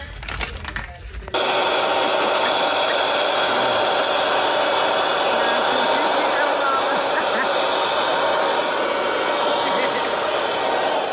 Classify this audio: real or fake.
real